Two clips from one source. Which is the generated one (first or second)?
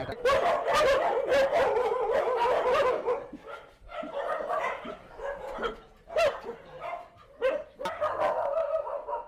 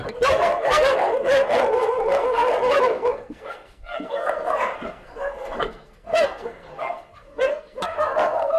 second